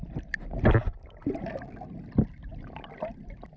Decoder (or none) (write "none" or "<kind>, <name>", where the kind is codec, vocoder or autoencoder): none